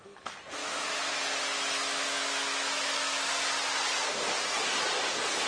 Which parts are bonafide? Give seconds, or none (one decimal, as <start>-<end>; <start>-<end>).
0.0-0.6; 3.3-5.5